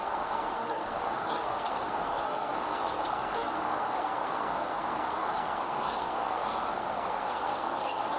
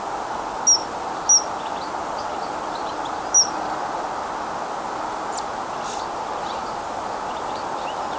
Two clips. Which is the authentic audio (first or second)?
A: second